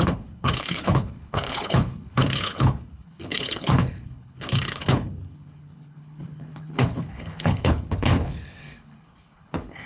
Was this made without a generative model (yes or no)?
no